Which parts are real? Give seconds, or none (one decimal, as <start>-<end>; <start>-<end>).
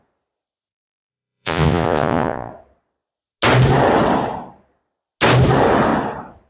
0.0-1.1; 2.5-6.5